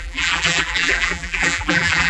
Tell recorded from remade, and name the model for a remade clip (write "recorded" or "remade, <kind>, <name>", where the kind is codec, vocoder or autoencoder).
remade, vocoder, BigVGAN v2